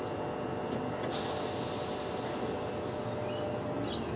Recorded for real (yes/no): yes